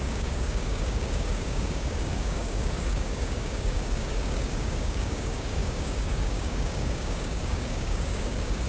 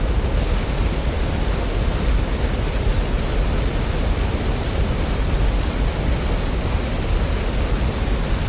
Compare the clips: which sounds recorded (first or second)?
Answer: second